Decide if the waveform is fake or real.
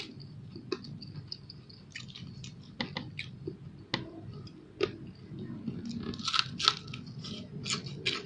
real